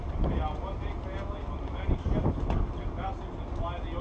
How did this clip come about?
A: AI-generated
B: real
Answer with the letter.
B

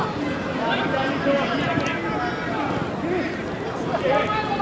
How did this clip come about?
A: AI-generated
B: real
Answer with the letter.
B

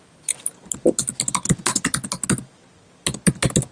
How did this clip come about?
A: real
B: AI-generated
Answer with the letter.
A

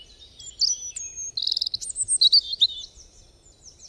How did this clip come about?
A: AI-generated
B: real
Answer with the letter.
B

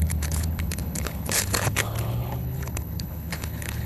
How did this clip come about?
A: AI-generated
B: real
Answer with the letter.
A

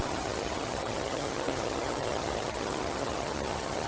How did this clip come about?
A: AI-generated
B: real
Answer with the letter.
A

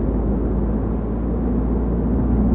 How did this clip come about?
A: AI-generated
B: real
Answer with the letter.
B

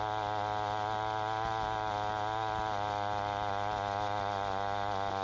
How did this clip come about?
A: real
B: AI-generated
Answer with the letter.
A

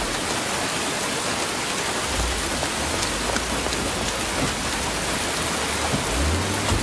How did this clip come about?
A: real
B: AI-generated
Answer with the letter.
A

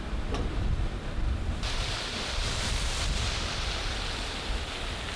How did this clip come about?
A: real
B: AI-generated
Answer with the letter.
A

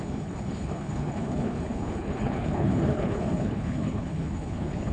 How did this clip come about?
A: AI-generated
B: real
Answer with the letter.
A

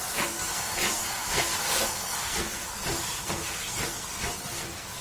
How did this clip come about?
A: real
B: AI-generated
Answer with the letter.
B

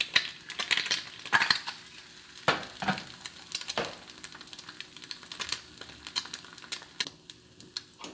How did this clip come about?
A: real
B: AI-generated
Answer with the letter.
A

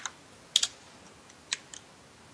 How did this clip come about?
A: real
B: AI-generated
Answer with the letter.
A